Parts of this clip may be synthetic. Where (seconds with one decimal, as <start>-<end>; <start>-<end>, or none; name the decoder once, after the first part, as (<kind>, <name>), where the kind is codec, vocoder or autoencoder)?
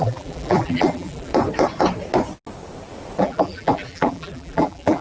0.0-1.3 (vocoder, BigVGAN v2); 3.2-5.0